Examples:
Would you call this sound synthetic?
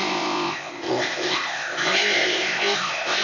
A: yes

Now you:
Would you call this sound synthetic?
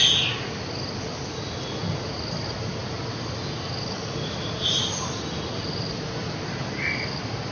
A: no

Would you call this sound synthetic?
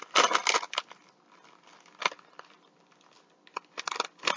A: no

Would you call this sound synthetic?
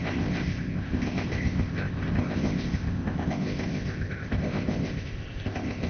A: yes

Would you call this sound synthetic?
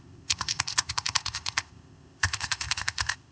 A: yes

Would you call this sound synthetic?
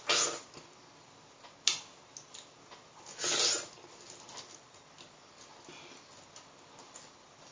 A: no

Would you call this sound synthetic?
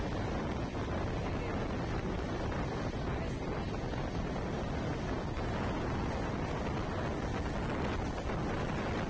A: no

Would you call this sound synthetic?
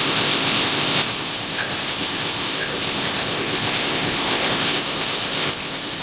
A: yes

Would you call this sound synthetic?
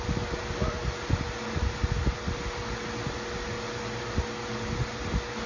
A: no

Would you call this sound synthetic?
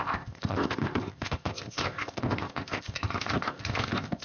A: yes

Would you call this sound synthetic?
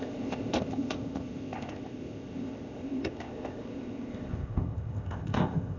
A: yes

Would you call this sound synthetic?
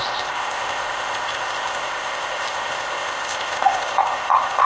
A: yes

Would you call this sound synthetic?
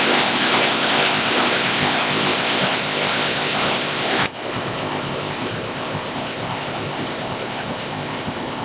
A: yes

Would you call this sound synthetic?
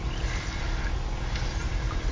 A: no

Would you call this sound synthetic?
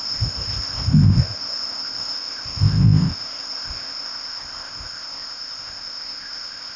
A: yes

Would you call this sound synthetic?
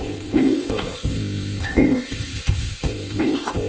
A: yes